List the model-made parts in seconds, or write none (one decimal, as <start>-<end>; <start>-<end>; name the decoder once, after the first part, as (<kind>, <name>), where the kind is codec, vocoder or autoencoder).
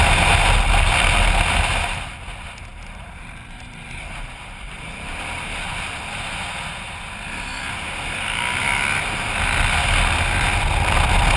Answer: 2.7-5.2 (vocoder, BigVGAN v2)